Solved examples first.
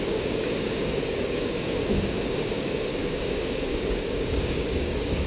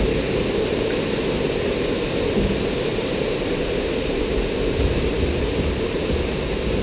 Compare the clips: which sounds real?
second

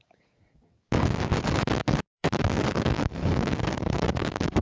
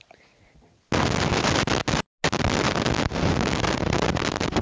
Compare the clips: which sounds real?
second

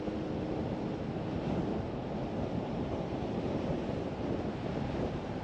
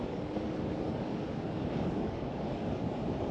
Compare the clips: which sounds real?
first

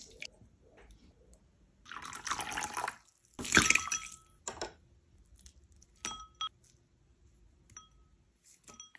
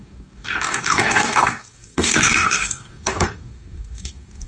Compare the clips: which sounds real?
first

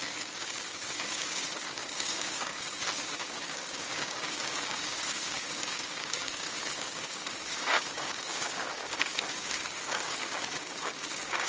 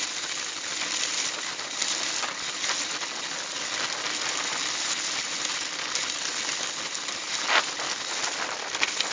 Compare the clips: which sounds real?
second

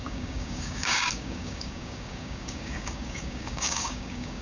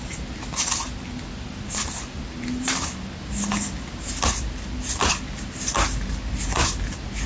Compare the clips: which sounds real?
second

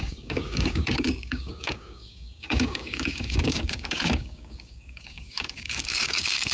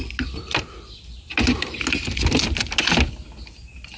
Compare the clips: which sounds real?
second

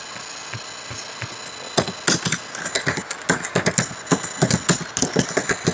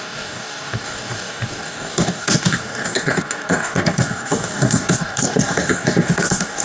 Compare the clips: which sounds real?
first